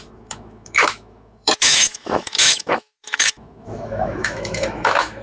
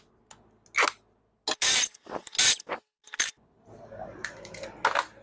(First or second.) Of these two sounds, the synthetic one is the first